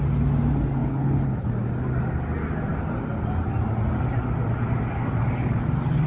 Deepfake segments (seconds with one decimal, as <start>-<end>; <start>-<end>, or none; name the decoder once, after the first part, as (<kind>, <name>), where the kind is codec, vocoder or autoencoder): 0.8-1.5 (codec, HILCodec)